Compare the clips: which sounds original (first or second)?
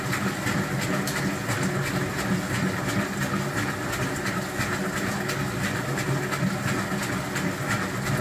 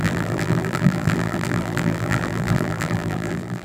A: first